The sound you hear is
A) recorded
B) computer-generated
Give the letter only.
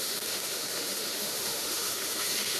B